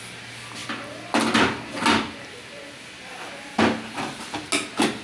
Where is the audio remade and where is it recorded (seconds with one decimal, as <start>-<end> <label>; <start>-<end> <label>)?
0.0-5.0 recorded